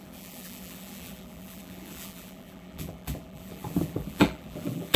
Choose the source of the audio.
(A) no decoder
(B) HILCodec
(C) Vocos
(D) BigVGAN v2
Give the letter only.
D